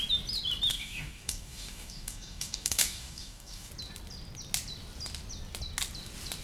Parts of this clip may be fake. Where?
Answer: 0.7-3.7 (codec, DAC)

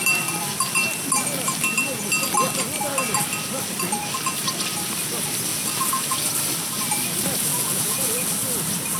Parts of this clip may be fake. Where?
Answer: 5.5-6.3 (vocoder, Vocos); 7.5-8.3